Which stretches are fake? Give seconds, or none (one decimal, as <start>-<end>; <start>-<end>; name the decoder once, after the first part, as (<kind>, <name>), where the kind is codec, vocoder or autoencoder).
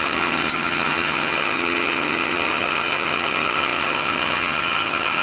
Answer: 0.0-5.2 (vocoder, HiFi-GAN)